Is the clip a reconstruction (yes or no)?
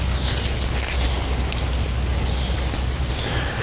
no